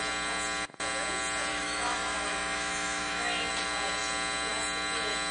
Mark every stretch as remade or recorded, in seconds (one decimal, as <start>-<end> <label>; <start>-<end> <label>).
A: 0.0-1.5 recorded; 1.5-3.5 remade; 3.5-5.3 recorded